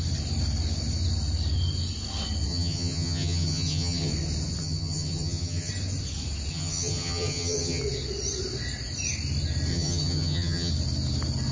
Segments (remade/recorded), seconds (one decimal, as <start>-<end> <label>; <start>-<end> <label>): 0.0-2.5 recorded; 2.5-4.1 remade; 4.1-4.6 recorded; 4.6-5.7 remade; 5.7-6.5 recorded; 6.5-7.8 remade; 7.8-9.7 recorded; 9.7-10.7 remade; 10.7-11.5 recorded